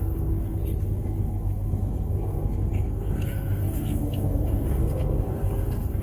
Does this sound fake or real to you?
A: fake